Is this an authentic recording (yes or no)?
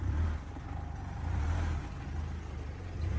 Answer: yes